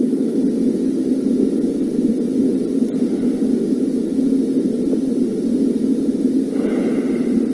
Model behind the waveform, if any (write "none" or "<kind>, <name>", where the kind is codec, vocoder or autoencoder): none